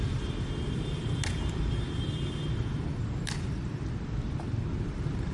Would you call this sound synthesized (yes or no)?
yes